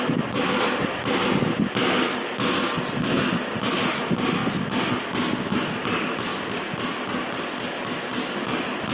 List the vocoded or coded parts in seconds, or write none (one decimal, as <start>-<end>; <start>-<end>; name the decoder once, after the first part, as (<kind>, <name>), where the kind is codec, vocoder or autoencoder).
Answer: 4.4-5.4 (vocoder, BigVGAN v2)